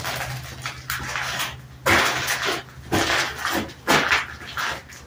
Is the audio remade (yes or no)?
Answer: no